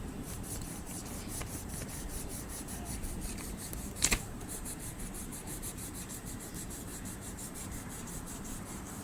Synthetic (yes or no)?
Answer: yes